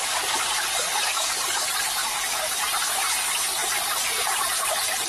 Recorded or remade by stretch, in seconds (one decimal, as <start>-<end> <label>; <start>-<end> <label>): 0.0-0.7 recorded; 0.7-1.4 remade; 1.4-2.0 recorded; 2.0-2.6 remade; 2.6-5.1 recorded